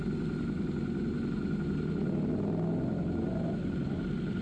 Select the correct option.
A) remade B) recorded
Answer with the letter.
B